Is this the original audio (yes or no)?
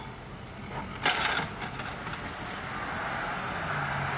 yes